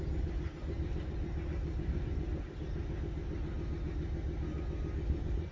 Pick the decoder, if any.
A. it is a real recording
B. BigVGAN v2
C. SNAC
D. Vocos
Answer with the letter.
A